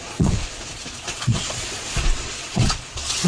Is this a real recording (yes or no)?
no